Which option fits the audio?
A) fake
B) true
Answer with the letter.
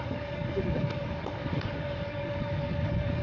A